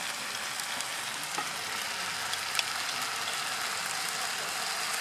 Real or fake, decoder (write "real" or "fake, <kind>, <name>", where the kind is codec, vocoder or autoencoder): real